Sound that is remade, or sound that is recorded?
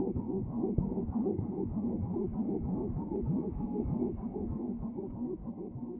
remade